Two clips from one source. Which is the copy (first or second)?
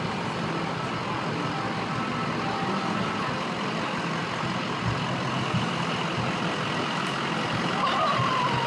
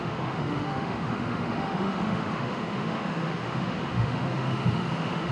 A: second